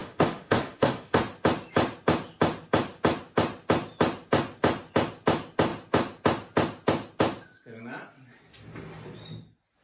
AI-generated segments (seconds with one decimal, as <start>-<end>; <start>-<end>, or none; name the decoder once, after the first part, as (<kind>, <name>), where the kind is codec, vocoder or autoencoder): 0.0-1.2 (autoencoder, DAC-VAE)